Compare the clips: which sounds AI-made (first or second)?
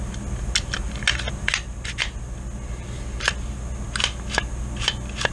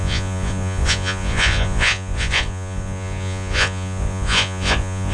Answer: second